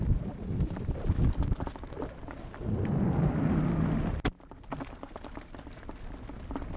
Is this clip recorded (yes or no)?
yes